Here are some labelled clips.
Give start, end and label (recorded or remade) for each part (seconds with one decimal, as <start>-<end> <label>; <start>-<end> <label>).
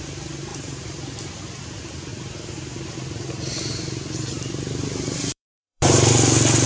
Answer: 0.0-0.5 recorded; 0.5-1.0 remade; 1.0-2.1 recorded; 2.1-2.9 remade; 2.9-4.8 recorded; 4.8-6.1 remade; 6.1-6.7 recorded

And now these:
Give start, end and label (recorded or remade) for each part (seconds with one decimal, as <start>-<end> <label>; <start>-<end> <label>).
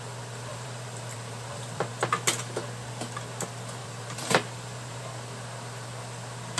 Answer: 0.0-0.5 recorded; 0.5-1.9 remade; 1.9-3.8 recorded; 3.8-5.0 remade; 5.0-6.6 recorded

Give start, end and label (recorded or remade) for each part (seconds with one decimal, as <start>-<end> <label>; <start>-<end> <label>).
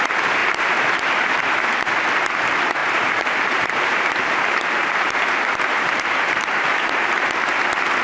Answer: 0.0-0.4 recorded; 0.4-1.4 remade; 1.4-2.8 recorded; 2.8-6.9 remade; 6.9-8.0 recorded